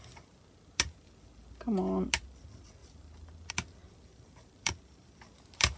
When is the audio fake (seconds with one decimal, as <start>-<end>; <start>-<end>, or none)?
4.1-4.7